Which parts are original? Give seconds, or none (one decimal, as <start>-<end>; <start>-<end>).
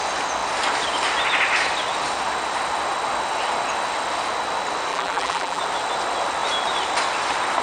0.0-4.9; 5.6-7.6